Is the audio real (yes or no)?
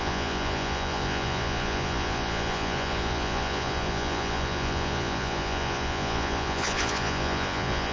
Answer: no